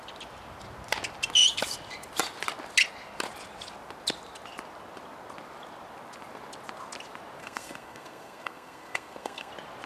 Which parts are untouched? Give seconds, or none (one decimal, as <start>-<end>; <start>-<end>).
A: 0.0-7.4; 9.5-9.9